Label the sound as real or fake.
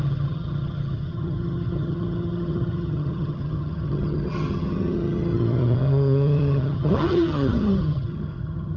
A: fake